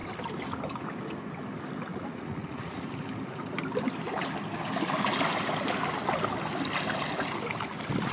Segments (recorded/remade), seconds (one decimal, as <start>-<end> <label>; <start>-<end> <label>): 0.0-1.9 recorded; 1.9-2.8 remade; 2.8-8.1 recorded